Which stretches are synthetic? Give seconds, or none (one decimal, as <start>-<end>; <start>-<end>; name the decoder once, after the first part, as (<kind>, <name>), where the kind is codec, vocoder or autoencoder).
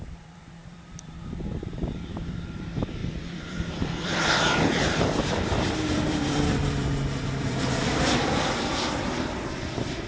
0.0-10.1 (vocoder, BigVGAN v2)